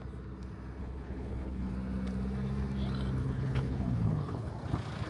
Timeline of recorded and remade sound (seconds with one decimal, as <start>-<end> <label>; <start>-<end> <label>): 0.0-0.8 recorded; 0.8-1.7 remade; 1.7-3.2 recorded; 3.2-4.5 remade; 4.5-5.1 recorded